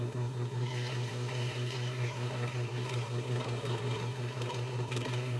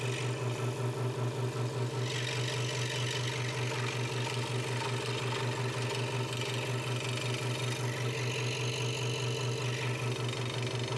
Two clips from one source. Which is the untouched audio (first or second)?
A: second